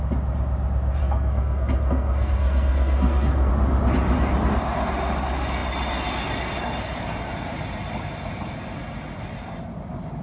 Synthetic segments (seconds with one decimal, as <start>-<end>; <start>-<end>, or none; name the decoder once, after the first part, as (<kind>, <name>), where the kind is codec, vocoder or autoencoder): 1.0-3.5 (codec, SNAC)